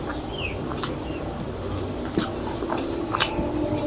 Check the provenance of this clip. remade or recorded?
recorded